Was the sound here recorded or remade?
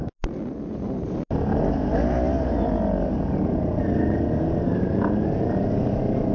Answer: recorded